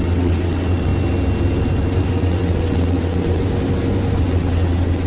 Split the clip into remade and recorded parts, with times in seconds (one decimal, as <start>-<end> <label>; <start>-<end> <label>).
0.0-0.9 remade; 0.9-2.1 recorded; 2.1-3.4 remade; 3.4-4.2 recorded; 4.2-5.1 remade

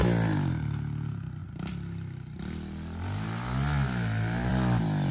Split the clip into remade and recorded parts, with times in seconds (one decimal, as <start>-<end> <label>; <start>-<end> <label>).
0.0-5.1 recorded